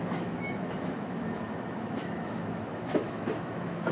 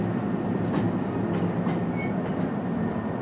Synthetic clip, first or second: first